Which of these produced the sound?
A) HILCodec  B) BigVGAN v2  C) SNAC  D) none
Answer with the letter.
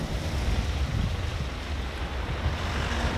D